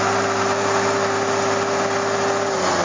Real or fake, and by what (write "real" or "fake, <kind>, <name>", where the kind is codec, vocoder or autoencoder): real